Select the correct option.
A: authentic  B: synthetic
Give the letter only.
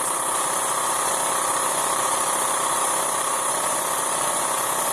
B